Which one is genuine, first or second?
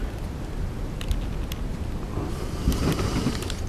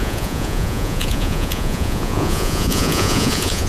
first